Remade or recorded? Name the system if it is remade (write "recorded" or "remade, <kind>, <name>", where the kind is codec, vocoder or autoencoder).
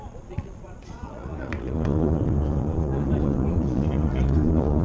remade, vocoder, Vocos